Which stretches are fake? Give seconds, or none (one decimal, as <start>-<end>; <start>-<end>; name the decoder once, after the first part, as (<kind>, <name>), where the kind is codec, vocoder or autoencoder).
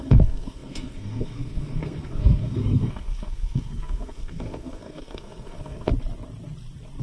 0.0-5.9 (codec, SNAC)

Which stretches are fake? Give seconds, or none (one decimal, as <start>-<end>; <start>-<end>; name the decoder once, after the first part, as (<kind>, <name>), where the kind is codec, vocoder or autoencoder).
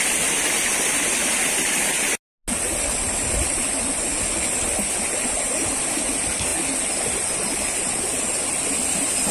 none